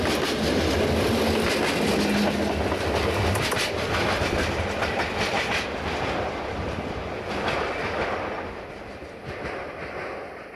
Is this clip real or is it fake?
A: real